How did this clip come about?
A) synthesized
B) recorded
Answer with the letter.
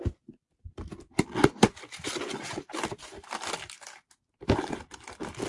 B